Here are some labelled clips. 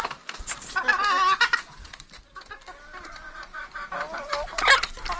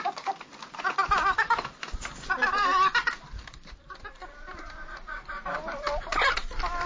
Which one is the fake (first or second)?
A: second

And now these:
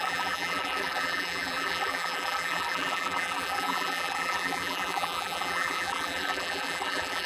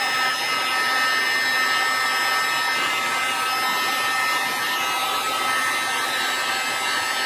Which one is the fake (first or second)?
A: first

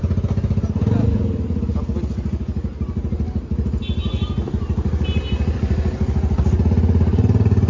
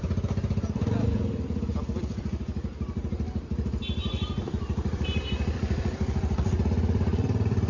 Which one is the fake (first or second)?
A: second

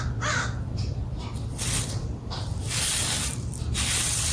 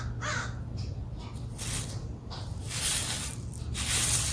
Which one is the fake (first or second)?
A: first